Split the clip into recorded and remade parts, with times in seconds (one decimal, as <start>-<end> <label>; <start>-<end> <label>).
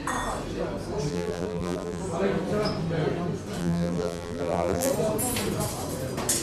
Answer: 0.0-1.1 recorded; 1.1-2.0 remade; 2.0-3.6 recorded; 3.6-4.9 remade; 4.9-6.4 recorded